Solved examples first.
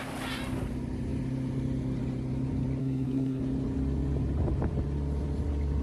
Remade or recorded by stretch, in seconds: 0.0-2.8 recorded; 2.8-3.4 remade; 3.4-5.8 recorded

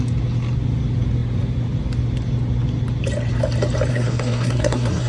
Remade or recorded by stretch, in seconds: 0.0-3.9 recorded; 3.9-5.1 remade

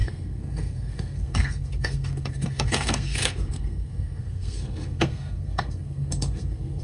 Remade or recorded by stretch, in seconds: 0.0-6.8 remade

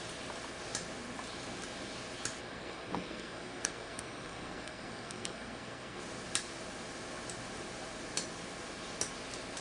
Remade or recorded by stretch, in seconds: 0.0-2.4 recorded; 2.4-6.0 remade; 6.0-9.6 recorded

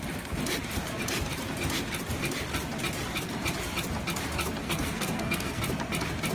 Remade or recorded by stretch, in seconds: 0.0-4.6 recorded; 4.6-5.6 remade; 5.6-6.3 recorded

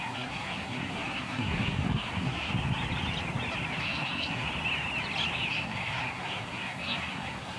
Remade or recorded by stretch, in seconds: 0.0-2.5 remade; 2.5-3.8 recorded; 3.8-4.5 remade; 4.5-5.5 recorded; 5.5-7.6 remade

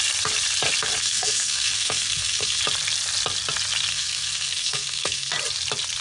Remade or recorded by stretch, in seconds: 0.0-1.0 recorded; 1.0-2.6 remade; 2.6-3.9 recorded; 3.9-5.3 remade; 5.3-6.0 recorded